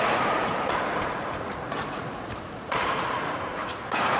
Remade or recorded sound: remade